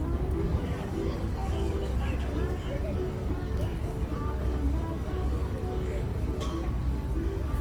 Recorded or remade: remade